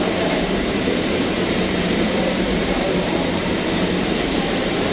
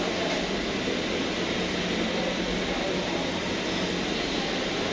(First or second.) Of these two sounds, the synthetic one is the first